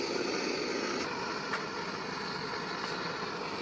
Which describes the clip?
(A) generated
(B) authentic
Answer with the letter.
B